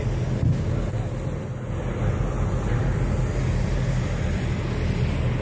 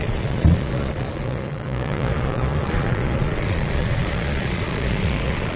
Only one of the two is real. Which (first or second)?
first